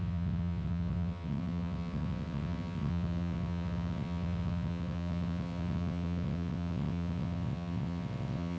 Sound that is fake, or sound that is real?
fake